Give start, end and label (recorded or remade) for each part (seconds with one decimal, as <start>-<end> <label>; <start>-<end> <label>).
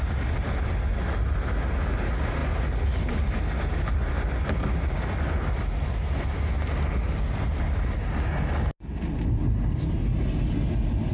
0.0-11.1 recorded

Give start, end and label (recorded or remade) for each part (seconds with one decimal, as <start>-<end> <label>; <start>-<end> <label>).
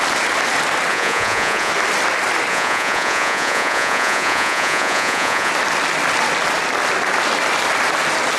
0.0-0.9 recorded; 0.9-1.7 remade; 1.7-2.5 recorded; 2.5-5.5 remade; 5.5-8.4 recorded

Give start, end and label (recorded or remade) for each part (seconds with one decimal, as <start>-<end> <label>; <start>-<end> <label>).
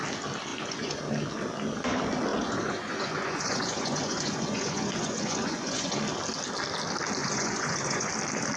0.0-0.5 recorded; 0.5-1.0 remade; 1.0-2.3 recorded; 2.3-6.0 remade; 6.0-7.2 recorded; 7.2-8.1 remade; 8.1-8.6 recorded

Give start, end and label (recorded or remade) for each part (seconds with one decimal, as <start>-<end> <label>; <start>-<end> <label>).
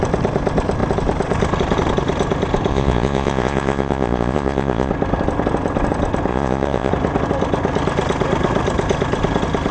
0.0-2.7 recorded; 2.7-4.9 remade; 4.9-6.3 recorded; 6.3-6.9 remade; 6.9-9.7 recorded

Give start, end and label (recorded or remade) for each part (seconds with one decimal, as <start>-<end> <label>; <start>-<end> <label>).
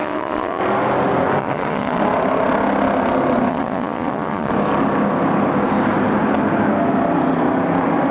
0.0-0.6 remade; 0.6-1.4 recorded; 1.4-2.0 remade; 2.0-3.5 recorded; 3.5-4.5 remade; 4.5-8.1 recorded